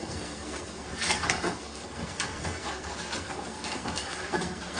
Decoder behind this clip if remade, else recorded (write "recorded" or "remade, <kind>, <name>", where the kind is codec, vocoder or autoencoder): remade, codec, SNAC